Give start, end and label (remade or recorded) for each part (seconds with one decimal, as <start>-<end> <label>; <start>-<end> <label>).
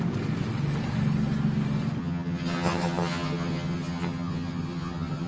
0.0-2.0 recorded; 2.0-5.3 remade